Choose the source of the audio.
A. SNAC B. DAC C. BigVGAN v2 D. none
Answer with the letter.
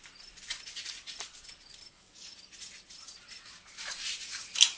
D